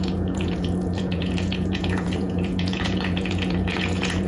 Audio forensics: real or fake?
fake